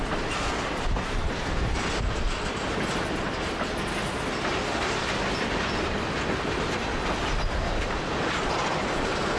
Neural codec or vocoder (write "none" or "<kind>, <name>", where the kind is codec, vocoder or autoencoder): none